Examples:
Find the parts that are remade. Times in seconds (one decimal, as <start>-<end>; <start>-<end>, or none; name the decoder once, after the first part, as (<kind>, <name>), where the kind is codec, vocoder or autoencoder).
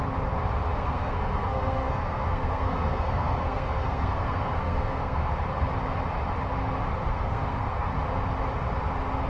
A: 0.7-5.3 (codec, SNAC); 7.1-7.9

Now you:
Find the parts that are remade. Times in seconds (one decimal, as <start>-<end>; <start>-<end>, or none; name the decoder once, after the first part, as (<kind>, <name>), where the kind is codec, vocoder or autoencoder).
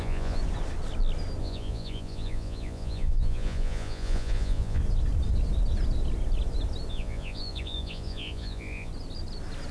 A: 0.0-0.4 (vocoder, Vocos); 1.4-4.8; 6.9-8.9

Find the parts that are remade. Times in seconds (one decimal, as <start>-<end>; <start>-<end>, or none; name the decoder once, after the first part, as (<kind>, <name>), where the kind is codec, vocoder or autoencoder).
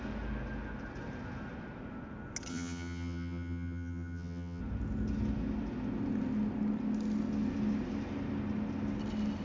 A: 2.5-4.6 (vocoder, HiFi-GAN)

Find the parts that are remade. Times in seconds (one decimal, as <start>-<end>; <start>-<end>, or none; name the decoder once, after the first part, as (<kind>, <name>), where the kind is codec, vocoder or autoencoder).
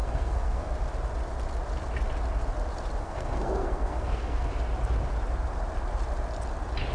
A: 0.0-0.7 (codec, SNAC); 3.0-4.5